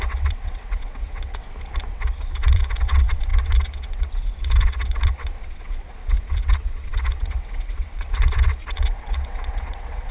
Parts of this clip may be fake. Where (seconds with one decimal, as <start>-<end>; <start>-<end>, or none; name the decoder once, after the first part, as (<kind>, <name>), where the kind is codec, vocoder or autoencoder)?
0.0-1.4 (vocoder, WaveNeXt); 1.9-10.1